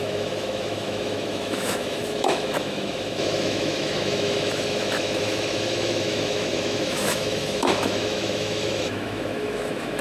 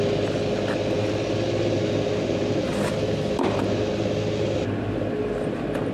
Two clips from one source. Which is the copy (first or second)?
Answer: first